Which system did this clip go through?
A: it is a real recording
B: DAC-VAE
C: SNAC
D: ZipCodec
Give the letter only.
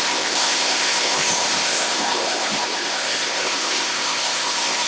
D